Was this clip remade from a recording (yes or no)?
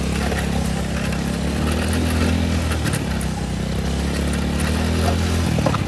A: no